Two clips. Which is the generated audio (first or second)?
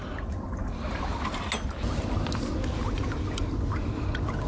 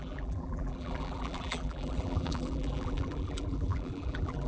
second